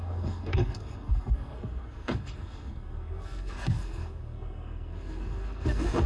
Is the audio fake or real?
fake